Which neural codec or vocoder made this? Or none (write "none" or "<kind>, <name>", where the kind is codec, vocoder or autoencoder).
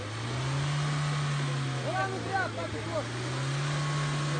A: none